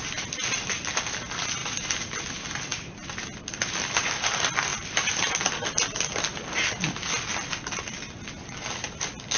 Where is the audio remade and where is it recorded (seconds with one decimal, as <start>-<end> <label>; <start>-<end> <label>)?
0.0-9.4 recorded